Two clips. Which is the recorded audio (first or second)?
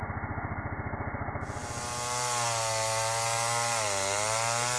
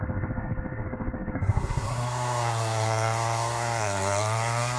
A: first